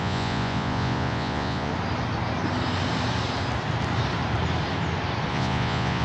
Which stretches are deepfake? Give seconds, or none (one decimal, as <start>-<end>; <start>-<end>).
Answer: 0.0-1.7; 5.3-6.0